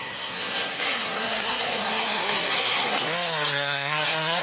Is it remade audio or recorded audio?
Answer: remade